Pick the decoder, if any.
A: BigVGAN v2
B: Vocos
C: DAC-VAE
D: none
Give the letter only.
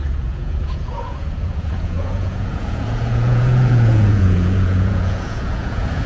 B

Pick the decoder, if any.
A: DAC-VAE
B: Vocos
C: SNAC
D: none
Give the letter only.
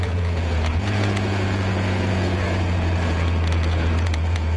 B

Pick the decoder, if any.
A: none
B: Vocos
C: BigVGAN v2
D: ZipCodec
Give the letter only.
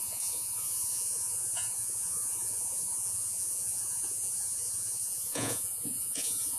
B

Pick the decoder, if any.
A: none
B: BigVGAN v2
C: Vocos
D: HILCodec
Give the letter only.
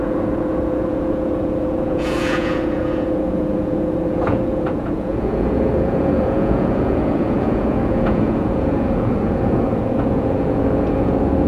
C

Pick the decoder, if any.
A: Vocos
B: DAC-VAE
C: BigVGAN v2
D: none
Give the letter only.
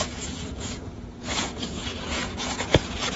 A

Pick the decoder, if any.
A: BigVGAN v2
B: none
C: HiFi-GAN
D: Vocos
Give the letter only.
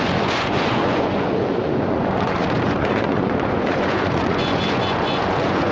D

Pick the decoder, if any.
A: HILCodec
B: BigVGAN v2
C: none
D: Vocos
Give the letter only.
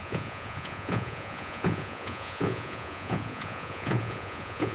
D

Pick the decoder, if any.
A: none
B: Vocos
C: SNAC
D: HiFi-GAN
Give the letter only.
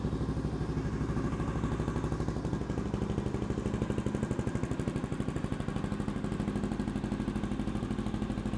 A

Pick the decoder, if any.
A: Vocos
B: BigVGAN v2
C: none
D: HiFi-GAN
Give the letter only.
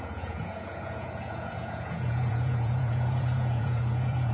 A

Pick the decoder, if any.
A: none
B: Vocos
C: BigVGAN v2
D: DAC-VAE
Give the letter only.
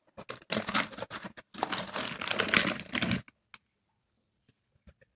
A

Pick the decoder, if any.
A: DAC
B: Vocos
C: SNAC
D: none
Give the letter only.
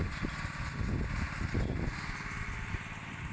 D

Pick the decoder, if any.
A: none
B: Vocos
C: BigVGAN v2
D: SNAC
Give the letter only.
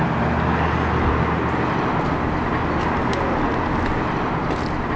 A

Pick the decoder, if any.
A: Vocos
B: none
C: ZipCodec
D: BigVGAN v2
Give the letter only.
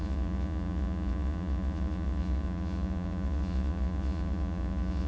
A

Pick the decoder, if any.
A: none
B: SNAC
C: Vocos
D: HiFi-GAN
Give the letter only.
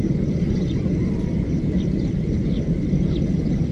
A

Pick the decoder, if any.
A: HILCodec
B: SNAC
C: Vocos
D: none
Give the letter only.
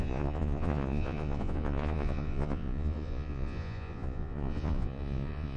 C